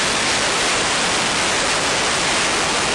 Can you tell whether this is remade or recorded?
recorded